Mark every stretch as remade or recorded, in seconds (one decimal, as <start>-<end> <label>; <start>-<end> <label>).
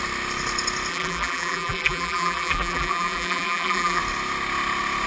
0.0-0.9 recorded; 0.9-4.0 remade; 4.0-5.1 recorded